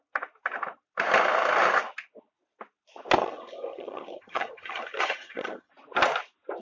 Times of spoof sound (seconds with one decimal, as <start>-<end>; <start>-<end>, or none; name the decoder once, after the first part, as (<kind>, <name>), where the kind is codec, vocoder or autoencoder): 3.2-5.7 (vocoder, HiFi-GAN)